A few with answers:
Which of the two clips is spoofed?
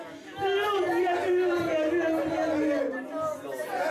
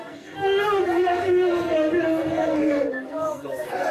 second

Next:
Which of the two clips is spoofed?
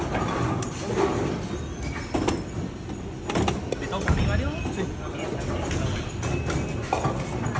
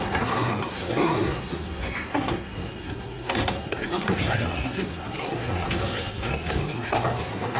second